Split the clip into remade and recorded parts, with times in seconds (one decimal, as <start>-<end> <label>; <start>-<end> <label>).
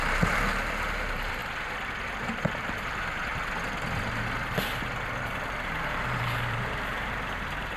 0.0-1.4 remade; 1.4-2.2 recorded; 2.2-3.3 remade; 3.3-5.6 recorded; 5.6-7.8 remade